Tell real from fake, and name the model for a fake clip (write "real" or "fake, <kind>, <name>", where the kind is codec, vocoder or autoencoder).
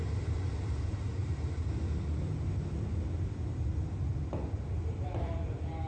real